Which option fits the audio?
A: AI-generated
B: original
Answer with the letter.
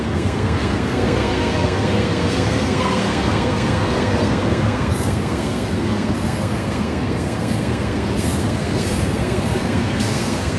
A